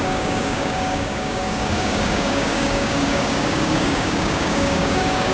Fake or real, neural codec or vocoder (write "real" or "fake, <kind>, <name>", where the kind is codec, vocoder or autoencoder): fake, codec, DAC